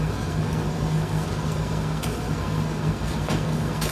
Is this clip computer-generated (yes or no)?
yes